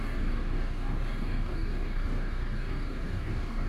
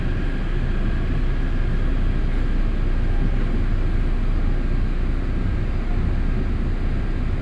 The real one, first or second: second